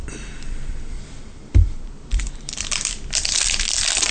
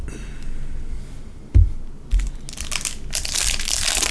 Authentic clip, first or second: second